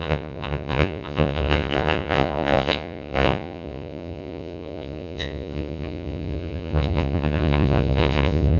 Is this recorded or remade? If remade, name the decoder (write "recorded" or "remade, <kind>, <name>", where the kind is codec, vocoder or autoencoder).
remade, vocoder, Vocos